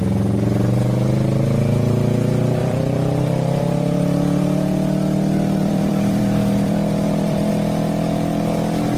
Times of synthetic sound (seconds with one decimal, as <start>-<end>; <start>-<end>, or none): 2.6-3.6; 5.6-7.5